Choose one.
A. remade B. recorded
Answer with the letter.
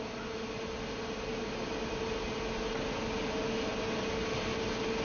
B